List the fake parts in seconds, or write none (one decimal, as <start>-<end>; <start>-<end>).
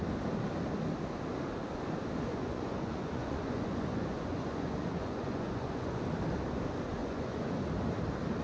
2.3-6.0; 7.0-7.7